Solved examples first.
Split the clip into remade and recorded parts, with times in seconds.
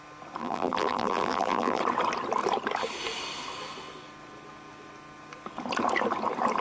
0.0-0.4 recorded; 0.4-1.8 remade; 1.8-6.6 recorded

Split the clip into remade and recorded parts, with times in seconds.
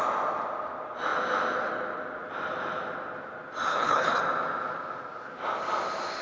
0.0-3.7 recorded; 3.7-4.2 remade; 4.2-6.2 recorded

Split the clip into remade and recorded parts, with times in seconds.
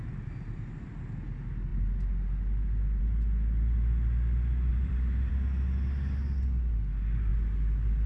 0.0-4.7 recorded; 4.7-5.3 remade; 5.3-8.1 recorded